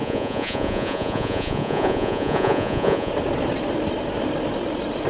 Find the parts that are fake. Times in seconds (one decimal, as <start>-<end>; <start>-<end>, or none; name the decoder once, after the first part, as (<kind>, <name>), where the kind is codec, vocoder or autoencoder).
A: 0.0-3.1 (vocoder, Vocos)